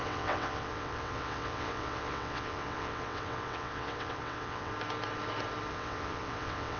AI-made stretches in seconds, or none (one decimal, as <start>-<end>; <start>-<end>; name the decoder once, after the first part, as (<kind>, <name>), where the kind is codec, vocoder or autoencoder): 0.0-4.7 (vocoder, WaveNeXt); 5.7-6.8